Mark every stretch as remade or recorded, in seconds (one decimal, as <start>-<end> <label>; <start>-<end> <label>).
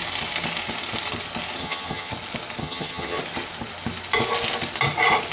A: 0.0-1.6 recorded; 1.6-2.1 remade; 2.1-2.6 recorded; 2.6-3.2 remade; 3.2-5.3 recorded